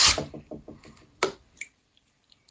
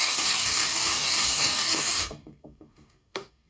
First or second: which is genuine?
first